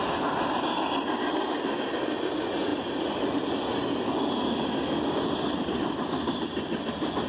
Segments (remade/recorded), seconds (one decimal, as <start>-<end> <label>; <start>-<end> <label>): 0.0-7.3 recorded

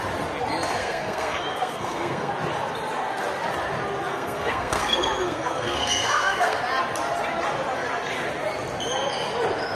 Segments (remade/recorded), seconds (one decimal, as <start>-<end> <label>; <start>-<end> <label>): 0.0-0.8 recorded; 0.8-2.3 remade; 2.3-4.1 recorded; 4.1-6.6 remade; 6.6-9.7 recorded